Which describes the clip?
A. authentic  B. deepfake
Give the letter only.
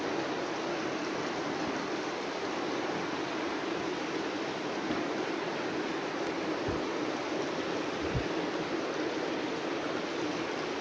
A